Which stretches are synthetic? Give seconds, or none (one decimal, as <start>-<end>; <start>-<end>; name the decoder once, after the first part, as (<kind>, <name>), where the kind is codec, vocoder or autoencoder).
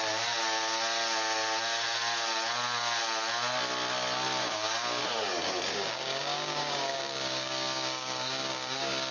4.4-5.0 (codec, DAC); 5.7-9.1